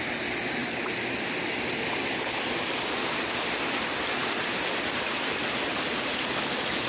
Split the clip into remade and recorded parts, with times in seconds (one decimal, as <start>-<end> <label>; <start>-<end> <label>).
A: 0.0-6.9 recorded